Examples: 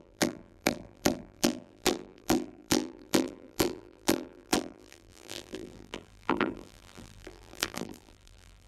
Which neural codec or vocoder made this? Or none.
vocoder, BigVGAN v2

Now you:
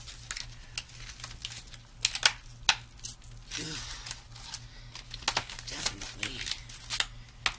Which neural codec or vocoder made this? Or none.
none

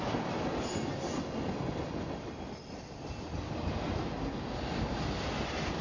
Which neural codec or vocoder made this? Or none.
none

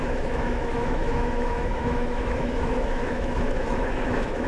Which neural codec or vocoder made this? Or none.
autoencoder, DAC-VAE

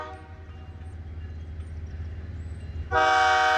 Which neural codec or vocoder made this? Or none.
none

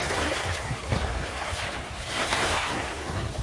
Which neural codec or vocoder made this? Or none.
codec, SNAC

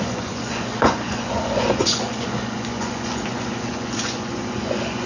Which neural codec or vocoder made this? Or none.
vocoder, Vocos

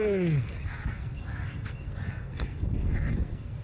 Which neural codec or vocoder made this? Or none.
codec, SNAC